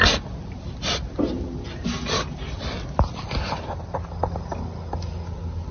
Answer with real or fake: real